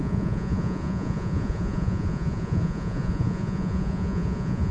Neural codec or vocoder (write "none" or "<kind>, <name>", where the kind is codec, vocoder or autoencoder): vocoder, Vocos